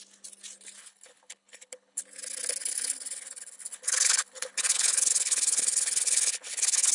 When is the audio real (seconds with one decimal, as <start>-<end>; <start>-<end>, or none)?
0.0-0.8; 2.0-2.6

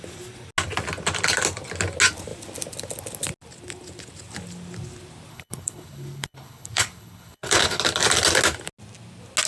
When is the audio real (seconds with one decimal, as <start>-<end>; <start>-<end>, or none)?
0.0-5.3; 7.8-9.5

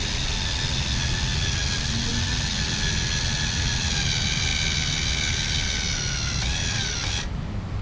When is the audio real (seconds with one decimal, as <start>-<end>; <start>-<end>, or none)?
0.0-7.8

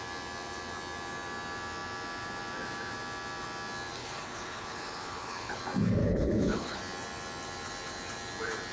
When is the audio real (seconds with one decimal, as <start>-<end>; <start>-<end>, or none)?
0.0-4.0; 5.6-6.0; 6.8-8.7

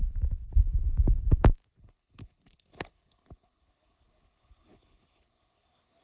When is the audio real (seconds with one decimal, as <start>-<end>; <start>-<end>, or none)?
0.0-1.8

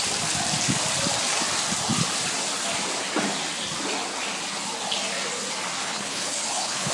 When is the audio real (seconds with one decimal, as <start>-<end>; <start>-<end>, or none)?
0.0-5.8

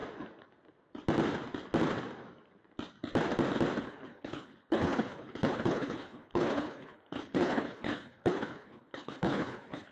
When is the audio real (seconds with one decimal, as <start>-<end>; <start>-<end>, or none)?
0.0-3.8

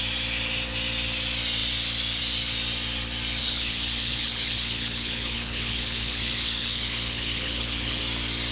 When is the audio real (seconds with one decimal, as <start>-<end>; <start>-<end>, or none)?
0.0-3.4; 8.0-8.5